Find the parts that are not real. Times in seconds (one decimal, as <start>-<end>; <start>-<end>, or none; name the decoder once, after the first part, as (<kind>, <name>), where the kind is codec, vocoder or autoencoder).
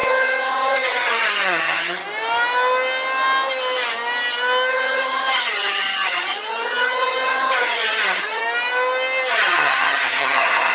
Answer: 0.0-2.0 (vocoder, HiFi-GAN); 4.7-8.4; 9.3-10.7